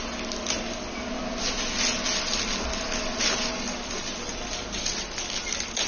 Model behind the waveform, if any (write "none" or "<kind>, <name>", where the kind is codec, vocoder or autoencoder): none